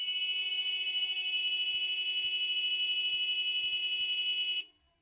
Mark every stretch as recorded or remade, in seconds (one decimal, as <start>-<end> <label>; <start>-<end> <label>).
0.0-0.4 recorded; 0.4-1.4 remade; 1.4-5.0 recorded